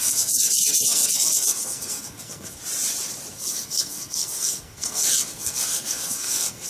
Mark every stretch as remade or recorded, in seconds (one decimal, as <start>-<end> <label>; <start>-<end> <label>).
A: 0.0-2.6 remade; 2.6-3.3 recorded; 3.3-6.7 remade